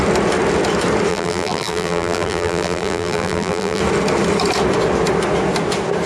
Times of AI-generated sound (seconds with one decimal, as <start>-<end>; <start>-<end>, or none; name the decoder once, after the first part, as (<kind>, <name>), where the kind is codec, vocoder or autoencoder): 1.1-3.8 (vocoder, BigVGAN v2)

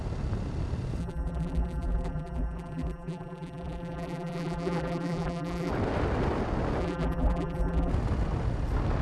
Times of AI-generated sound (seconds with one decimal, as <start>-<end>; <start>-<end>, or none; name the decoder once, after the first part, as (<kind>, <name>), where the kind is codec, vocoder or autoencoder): 1.0-5.7 (vocoder, BigVGAN v2); 6.8-7.9

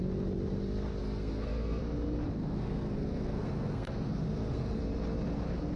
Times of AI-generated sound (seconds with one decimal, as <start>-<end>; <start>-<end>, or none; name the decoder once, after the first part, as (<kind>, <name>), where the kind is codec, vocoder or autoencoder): 1.0-1.8 (codec, SNAC); 2.4-4.8